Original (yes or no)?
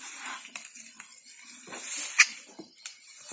yes